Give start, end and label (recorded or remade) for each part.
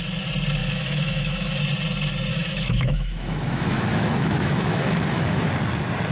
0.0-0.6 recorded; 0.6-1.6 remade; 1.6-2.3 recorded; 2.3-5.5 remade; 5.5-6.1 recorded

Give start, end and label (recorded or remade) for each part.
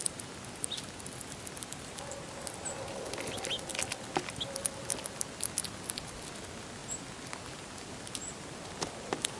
0.0-9.4 recorded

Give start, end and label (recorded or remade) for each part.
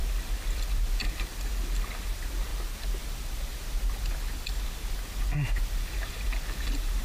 0.0-7.0 recorded